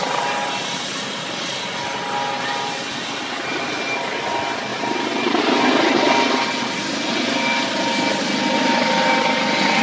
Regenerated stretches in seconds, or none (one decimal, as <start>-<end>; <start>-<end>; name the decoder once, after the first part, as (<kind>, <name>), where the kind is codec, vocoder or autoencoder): 0.0-1.5 (vocoder, BigVGAN v2); 4.7-5.4